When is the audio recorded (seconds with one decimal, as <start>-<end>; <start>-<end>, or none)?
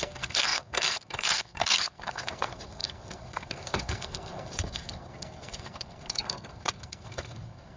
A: none